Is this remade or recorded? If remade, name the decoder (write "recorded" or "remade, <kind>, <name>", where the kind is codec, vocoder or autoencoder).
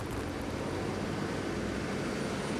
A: recorded